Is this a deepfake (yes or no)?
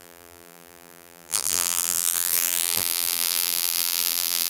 yes